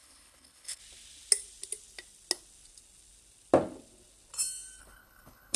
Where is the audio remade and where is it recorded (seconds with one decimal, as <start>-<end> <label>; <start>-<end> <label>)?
0.0-0.8 remade; 0.8-4.8 recorded; 4.8-5.6 remade